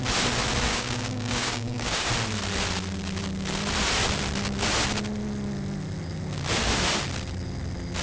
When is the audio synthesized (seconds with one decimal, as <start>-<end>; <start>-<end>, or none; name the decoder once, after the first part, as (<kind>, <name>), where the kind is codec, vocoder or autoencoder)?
0.7-2.1 (codec, DAC)